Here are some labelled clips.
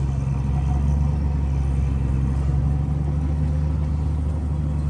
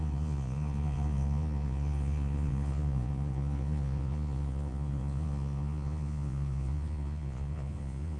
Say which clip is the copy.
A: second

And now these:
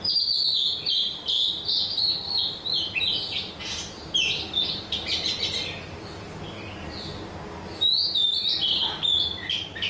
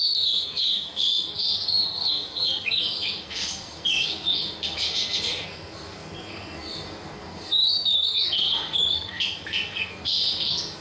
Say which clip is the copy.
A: second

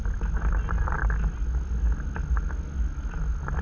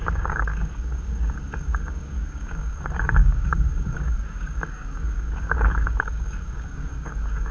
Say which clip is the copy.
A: second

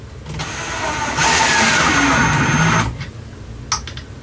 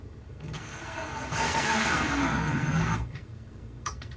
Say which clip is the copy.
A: second